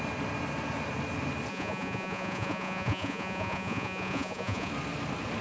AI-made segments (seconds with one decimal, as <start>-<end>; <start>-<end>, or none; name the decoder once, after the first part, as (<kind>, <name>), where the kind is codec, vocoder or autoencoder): 1.5-4.7 (vocoder, Vocos)